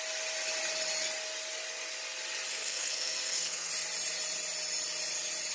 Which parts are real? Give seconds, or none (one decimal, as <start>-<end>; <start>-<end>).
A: 0.0-2.5; 3.7-5.5